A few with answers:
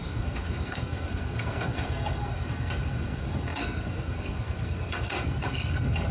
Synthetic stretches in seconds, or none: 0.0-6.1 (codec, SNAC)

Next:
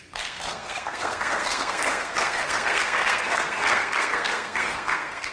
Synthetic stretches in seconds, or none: 0.0-5.3 (codec, SNAC)